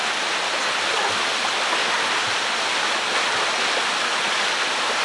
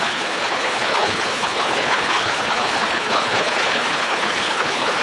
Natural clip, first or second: first